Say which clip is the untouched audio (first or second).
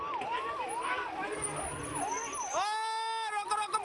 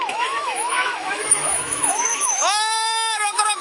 first